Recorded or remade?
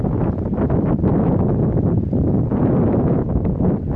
recorded